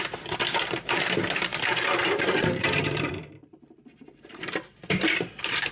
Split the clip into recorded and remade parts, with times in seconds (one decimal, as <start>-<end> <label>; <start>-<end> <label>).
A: 0.0-1.5 recorded; 1.5-4.4 remade; 4.4-5.7 recorded